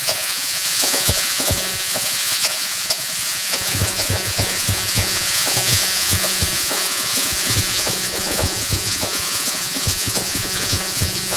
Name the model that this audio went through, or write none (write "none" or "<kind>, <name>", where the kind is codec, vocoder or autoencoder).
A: vocoder, Vocos